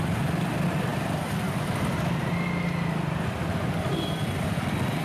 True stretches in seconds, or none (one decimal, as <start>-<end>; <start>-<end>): 0.0-5.0